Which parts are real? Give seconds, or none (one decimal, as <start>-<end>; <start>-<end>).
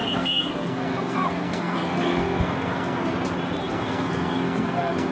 3.1-3.6